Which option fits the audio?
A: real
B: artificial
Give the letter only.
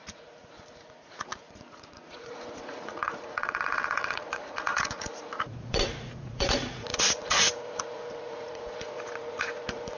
B